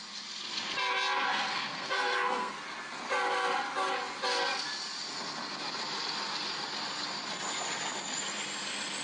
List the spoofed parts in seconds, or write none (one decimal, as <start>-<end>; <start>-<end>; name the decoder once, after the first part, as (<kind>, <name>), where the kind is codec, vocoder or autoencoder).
1.3-2.5 (codec, SNAC)